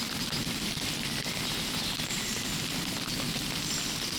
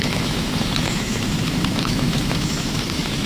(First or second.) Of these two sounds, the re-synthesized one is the second